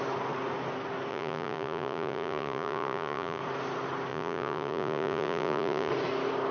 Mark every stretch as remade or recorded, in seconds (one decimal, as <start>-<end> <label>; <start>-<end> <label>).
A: 0.0-1.1 recorded; 1.1-3.4 remade; 3.4-4.1 recorded; 4.1-5.9 remade; 5.9-6.5 recorded